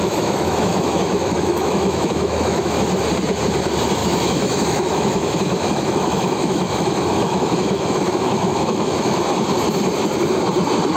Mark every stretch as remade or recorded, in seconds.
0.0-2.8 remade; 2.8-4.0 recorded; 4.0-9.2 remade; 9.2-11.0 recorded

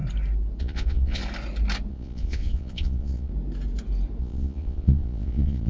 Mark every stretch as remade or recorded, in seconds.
0.0-0.6 recorded; 0.6-1.2 remade; 1.2-1.9 recorded; 1.9-3.3 remade; 3.3-4.2 recorded; 4.2-5.7 remade